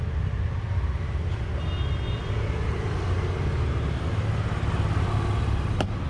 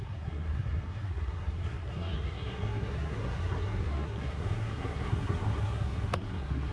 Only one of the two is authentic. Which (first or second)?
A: first